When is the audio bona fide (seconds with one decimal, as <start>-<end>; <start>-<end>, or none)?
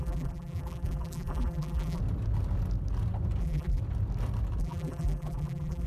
2.0-3.4; 3.8-4.6